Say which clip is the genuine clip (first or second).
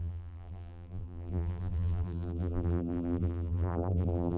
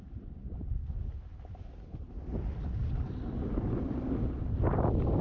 second